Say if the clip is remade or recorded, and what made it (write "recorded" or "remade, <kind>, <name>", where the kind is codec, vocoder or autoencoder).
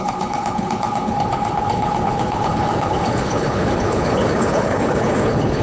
remade, codec, HILCodec